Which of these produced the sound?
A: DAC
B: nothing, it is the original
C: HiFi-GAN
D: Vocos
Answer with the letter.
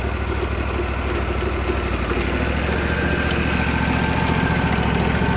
B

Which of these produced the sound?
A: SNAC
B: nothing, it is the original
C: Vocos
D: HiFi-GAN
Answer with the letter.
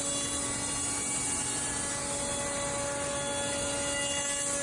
B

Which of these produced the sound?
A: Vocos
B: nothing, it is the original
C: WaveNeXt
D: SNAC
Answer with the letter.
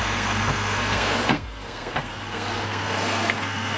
D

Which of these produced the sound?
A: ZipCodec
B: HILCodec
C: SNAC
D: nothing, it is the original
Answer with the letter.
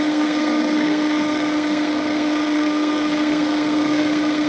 C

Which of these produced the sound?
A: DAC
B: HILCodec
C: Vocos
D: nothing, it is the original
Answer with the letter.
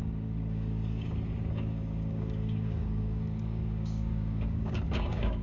A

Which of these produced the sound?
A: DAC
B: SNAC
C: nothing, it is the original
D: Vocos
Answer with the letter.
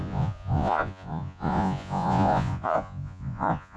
D